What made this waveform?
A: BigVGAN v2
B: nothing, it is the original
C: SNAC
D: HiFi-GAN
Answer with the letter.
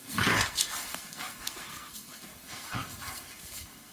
C